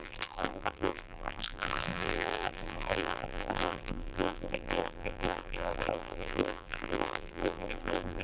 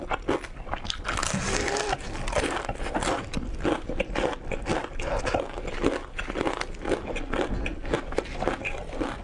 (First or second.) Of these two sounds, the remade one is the first